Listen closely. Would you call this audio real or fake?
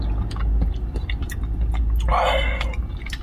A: real